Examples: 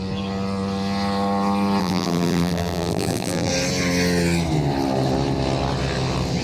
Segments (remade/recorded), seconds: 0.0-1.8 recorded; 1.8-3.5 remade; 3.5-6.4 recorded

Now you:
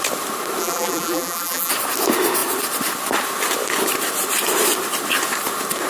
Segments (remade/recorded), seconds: 0.0-0.6 recorded; 0.6-1.7 remade; 1.7-5.9 recorded

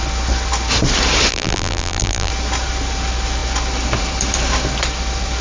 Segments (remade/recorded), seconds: 0.0-1.3 recorded; 1.3-2.3 remade; 2.3-5.4 recorded

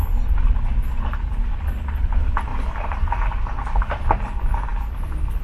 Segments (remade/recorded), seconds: 0.0-2.5 recorded; 2.5-3.2 remade; 3.2-5.4 recorded

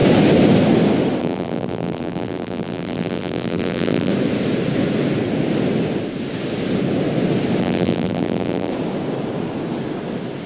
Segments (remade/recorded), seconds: 0.0-1.2 recorded; 1.2-4.1 remade; 4.1-7.6 recorded; 7.6-8.7 remade; 8.7-10.5 recorded

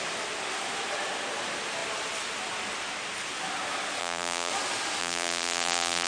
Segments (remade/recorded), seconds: 0.0-4.0 recorded; 4.0-4.5 remade; 4.5-5.0 recorded; 5.0-6.1 remade

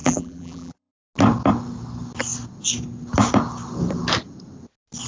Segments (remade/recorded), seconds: 0.0-0.9 remade; 0.9-5.1 recorded